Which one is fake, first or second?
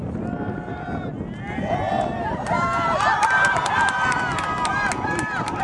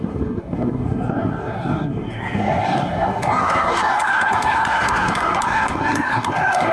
second